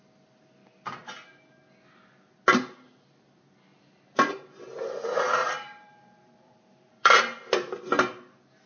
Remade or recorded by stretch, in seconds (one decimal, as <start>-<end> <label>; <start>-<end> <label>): 0.0-3.7 recorded; 3.7-4.3 remade; 4.3-5.4 recorded; 5.4-7.2 remade; 7.2-8.7 recorded